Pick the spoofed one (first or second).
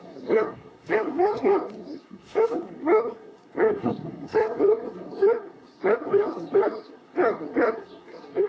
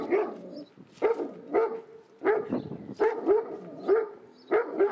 first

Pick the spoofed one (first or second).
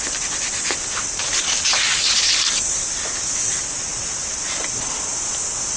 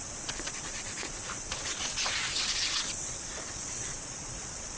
second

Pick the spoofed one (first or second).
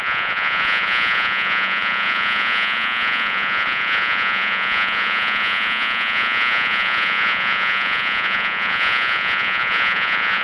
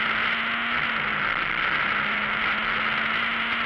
first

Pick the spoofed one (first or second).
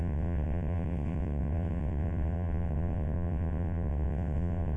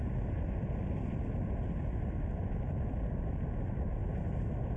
first